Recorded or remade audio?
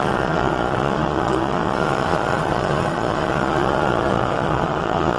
remade